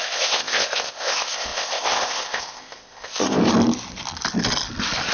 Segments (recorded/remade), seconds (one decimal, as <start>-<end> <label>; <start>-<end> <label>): 0.0-3.4 remade; 3.4-5.1 recorded